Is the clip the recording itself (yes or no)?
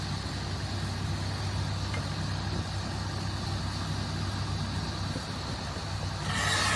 yes